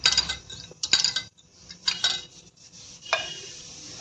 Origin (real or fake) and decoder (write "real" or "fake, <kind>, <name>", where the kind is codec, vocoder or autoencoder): fake, vocoder, BigVGAN v2